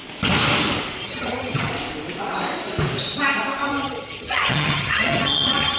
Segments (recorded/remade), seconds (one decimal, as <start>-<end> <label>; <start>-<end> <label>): 0.0-1.0 recorded; 1.0-1.7 remade; 1.7-3.7 recorded; 3.7-5.8 remade